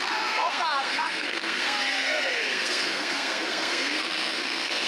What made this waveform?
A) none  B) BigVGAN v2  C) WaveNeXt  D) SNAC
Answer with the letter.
D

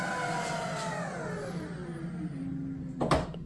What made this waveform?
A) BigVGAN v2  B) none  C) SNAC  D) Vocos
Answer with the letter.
B